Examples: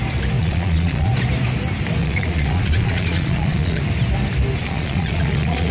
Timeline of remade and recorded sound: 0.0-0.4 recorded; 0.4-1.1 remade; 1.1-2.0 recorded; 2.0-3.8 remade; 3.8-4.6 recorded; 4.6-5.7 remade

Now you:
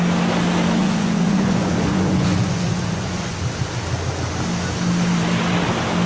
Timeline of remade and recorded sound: 0.0-0.8 recorded; 0.8-3.4 remade; 3.4-6.1 recorded

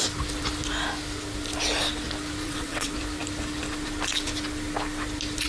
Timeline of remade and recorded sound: 0.0-2.4 recorded; 2.4-2.9 remade; 2.9-5.5 recorded

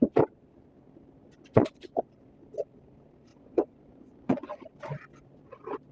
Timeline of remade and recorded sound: 0.0-1.5 recorded; 1.5-2.0 remade; 2.0-3.3 recorded; 3.3-4.6 remade; 4.6-5.9 recorded

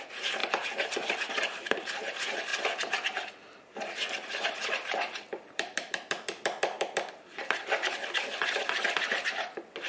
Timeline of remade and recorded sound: 0.0-2.5 remade; 2.5-4.7 recorded; 4.7-9.9 remade